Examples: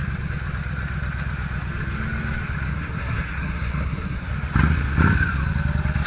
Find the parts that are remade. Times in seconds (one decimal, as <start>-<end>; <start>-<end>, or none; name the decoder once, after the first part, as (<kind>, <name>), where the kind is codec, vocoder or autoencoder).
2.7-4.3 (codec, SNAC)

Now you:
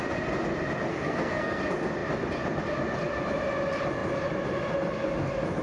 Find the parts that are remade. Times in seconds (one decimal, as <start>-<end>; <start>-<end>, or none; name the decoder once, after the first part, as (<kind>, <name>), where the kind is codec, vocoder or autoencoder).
0.9-1.6 (codec, SNAC)

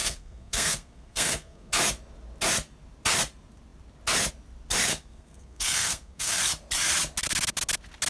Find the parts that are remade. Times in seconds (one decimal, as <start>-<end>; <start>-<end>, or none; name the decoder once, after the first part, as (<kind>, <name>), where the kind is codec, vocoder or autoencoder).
0.0-1.7 (codec, SNAC); 4.9-6.4